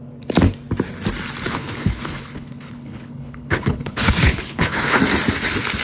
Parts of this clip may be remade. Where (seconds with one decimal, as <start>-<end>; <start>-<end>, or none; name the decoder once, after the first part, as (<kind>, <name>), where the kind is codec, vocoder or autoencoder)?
1.5-5.0 (codec, HILCodec)